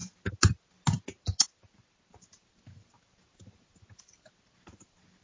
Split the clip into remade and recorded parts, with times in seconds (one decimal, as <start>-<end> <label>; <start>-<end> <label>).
0.0-5.2 recorded